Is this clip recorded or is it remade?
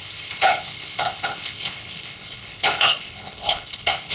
remade